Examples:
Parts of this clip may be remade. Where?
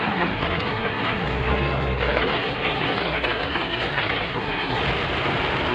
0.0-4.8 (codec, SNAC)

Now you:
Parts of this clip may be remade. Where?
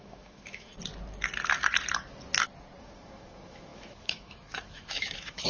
0.0-0.7 (autoencoder, DAC-VAE); 2.8-5.5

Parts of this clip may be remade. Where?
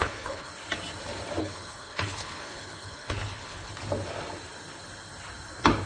0.0-0.5 (codec, HILCodec); 1.4-3.7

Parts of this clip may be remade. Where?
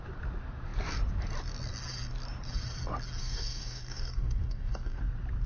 3.2-5.0 (codec, DAC)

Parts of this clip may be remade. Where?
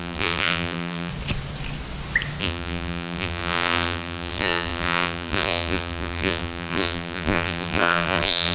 0.0-1.1 (vocoder, BigVGAN v2); 2.4-8.5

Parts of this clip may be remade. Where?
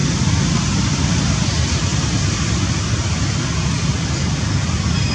none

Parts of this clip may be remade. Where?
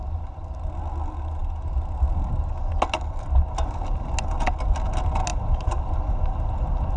none